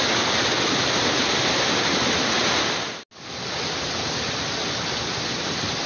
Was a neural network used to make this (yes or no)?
no